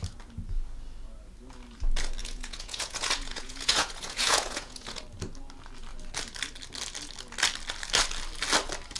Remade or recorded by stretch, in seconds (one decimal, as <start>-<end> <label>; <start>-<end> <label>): 0.0-2.2 recorded; 2.2-5.0 remade; 5.0-9.0 recorded